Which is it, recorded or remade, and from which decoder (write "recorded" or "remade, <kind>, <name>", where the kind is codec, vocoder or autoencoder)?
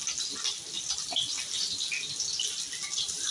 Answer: recorded